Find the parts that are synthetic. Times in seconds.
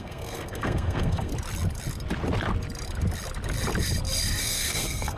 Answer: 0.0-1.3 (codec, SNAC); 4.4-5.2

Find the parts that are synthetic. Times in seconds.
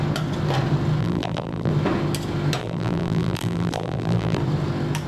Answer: 1.0-1.7 (vocoder, BigVGAN v2); 2.6-4.4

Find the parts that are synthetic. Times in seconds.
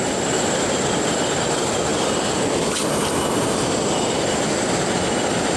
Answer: none